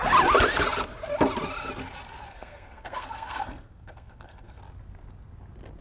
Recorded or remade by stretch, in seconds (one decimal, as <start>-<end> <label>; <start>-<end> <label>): 0.0-2.3 recorded; 2.3-4.6 remade; 4.6-5.8 recorded